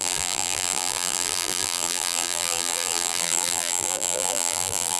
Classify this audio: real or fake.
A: fake